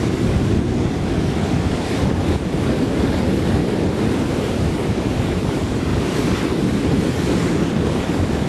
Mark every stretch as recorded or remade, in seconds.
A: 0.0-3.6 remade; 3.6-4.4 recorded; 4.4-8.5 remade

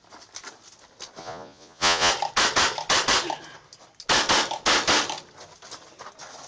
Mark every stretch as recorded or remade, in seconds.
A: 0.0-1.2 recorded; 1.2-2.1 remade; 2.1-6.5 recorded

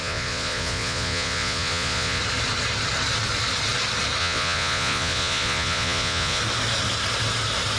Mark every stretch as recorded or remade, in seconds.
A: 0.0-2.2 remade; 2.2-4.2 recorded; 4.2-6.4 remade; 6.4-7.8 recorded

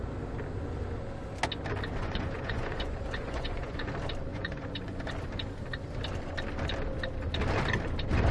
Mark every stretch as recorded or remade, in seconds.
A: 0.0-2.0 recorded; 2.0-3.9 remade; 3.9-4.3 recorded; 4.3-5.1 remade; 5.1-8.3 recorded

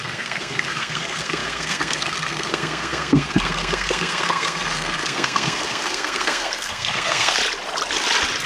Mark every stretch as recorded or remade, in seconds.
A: 0.0-7.4 remade; 7.4-8.5 recorded